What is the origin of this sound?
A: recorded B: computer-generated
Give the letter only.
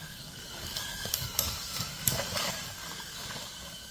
B